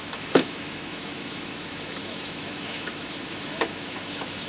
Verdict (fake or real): fake